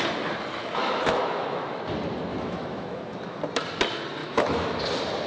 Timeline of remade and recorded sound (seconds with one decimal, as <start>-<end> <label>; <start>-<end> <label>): 0.0-0.6 recorded; 0.6-1.8 remade; 1.8-2.3 recorded; 2.3-3.4 remade; 3.4-4.2 recorded; 4.2-4.8 remade; 4.8-5.3 recorded